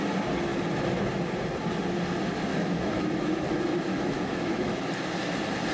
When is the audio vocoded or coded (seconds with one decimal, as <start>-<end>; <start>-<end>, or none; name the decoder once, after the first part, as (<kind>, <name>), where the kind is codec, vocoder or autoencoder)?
2.5-4.8 (autoencoder, DAC-VAE)